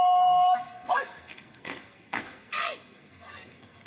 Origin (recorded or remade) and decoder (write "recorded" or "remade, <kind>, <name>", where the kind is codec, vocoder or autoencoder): remade, codec, SNAC